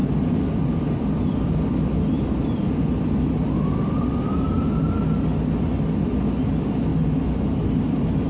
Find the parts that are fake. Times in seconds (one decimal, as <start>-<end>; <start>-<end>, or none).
0.0-4.6

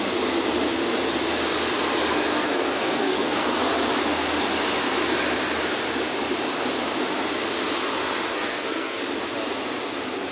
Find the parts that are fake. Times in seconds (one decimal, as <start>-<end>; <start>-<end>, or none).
2.3-3.6; 8.3-9.0

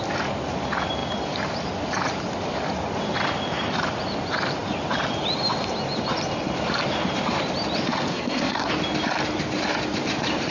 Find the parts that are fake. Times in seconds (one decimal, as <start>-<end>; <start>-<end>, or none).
8.1-8.7

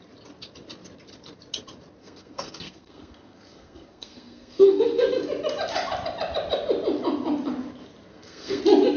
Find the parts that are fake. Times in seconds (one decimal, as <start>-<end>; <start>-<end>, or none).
2.0-5.1; 8.1-8.6

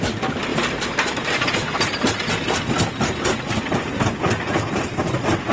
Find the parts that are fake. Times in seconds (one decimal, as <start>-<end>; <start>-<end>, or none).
none

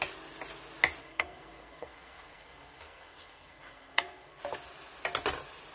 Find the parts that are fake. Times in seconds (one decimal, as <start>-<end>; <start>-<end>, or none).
1.0-4.4